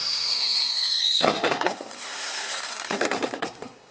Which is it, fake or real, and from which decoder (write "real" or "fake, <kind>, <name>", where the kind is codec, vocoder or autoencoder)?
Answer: fake, codec, SNAC